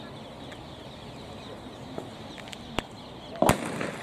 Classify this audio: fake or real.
real